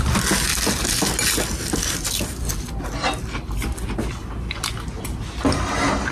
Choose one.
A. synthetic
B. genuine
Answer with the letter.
B